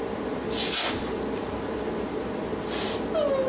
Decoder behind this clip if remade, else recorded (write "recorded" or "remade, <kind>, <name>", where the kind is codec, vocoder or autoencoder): recorded